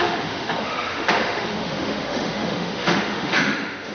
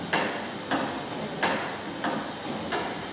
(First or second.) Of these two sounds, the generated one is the first